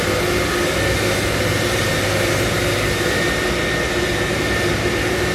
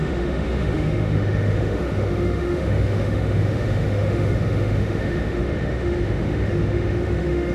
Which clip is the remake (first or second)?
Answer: second